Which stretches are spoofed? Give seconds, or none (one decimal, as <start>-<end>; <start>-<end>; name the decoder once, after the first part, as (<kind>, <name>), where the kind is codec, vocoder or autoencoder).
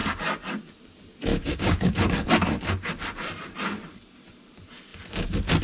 1.3-2.1 (codec, DAC)